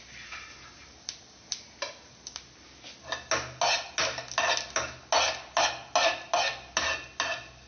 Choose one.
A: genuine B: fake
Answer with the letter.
A